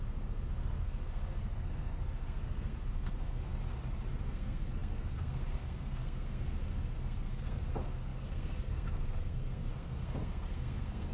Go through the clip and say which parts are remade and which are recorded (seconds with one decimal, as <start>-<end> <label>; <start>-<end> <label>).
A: 0.0-3.5 remade; 3.5-4.2 recorded; 4.2-11.1 remade